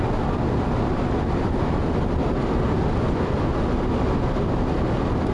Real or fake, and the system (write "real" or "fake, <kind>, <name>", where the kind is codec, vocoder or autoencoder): real